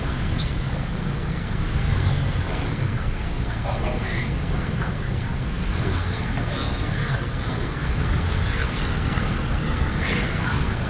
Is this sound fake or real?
fake